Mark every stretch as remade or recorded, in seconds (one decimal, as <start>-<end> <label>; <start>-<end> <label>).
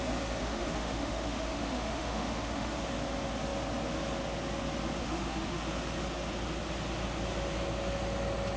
0.0-0.4 recorded; 0.4-2.9 remade; 2.9-5.0 recorded; 5.0-5.6 remade; 5.6-8.6 recorded